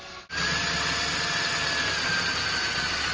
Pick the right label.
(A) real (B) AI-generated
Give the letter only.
A